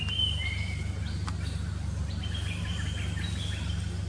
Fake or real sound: fake